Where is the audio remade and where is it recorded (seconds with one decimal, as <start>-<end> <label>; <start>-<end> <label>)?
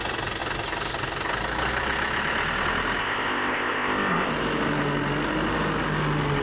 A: 0.0-3.0 recorded; 3.0-4.3 remade; 4.3-6.4 recorded